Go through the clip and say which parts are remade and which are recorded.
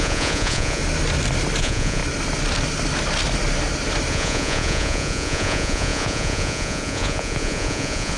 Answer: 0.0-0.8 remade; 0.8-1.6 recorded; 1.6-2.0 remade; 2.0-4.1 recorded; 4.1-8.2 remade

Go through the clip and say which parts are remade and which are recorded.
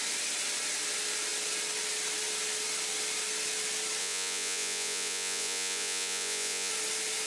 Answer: 0.0-4.0 recorded; 4.0-6.7 remade; 6.7-7.3 recorded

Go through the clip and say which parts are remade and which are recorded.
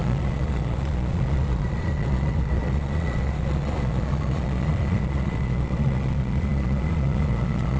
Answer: 0.0-7.8 remade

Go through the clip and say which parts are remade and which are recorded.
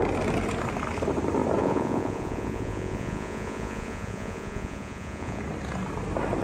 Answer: 0.0-1.6 recorded; 1.6-5.4 remade; 5.4-6.4 recorded